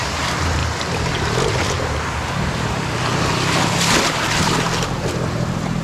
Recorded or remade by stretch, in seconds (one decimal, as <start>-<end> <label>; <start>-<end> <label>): 0.0-0.6 remade; 0.6-4.1 recorded; 4.1-5.8 remade